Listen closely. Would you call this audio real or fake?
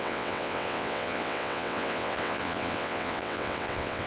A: fake